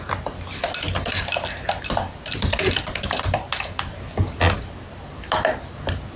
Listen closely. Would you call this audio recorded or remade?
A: recorded